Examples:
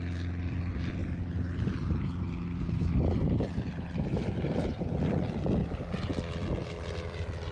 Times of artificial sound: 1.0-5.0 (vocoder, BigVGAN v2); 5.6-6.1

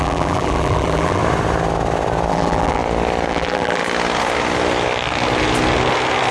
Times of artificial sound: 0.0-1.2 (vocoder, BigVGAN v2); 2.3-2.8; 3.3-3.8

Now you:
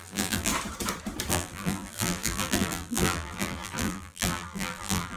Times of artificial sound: 0.0-0.5 (vocoder, BigVGAN v2); 1.3-5.2